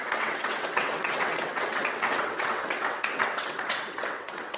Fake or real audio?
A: fake